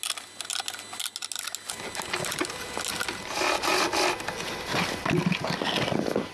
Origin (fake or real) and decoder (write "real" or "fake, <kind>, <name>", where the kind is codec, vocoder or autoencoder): real